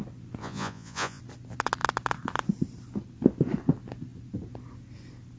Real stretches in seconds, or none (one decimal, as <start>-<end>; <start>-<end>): 0.0-0.4; 1.2-5.4